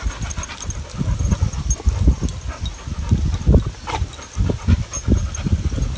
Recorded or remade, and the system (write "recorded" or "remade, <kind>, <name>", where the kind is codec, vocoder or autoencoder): recorded